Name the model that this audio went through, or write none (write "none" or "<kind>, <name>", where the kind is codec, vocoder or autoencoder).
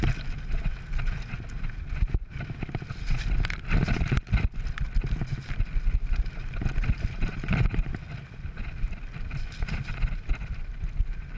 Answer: none